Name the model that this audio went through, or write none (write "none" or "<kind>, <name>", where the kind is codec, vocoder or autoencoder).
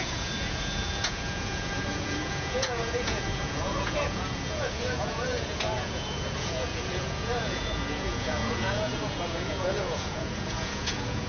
vocoder, Vocos